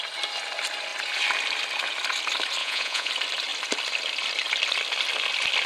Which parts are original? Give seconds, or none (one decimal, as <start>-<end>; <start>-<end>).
0.0-2.6; 3.1-5.7